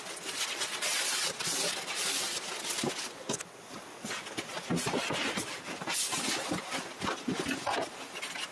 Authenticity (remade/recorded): recorded